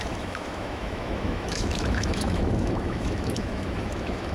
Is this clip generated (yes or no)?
yes